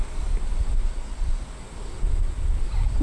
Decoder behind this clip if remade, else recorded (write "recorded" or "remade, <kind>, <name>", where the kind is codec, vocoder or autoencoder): recorded